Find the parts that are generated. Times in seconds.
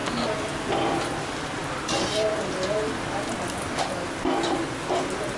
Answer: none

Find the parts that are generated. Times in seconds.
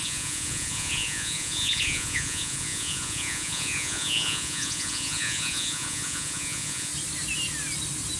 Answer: 0.0-6.9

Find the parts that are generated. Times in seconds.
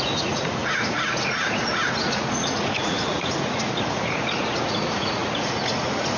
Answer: 0.0-6.2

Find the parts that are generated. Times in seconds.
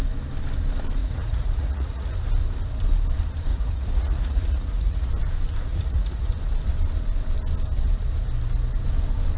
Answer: 1.0-2.1; 3.5-5.1; 5.7-6.3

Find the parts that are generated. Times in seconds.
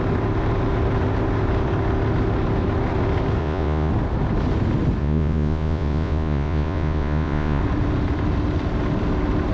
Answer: 3.4-3.9; 5.0-7.6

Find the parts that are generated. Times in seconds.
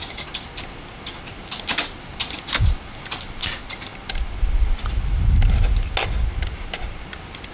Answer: none